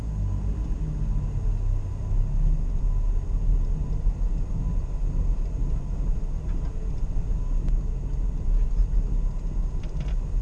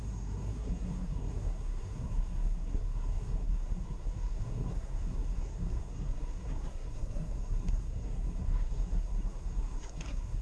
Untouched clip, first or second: first